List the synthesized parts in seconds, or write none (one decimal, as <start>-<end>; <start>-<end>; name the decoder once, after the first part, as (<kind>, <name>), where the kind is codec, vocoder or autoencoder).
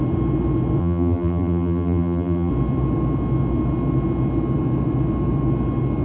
0.8-2.5 (vocoder, BigVGAN v2)